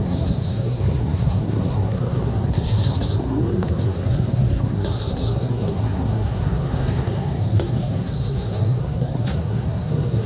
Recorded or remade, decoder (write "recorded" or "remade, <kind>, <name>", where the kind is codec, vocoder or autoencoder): remade, codec, SNAC